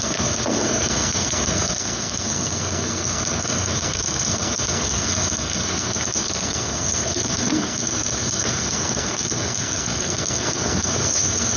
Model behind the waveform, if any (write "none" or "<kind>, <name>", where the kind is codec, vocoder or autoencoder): codec, SNAC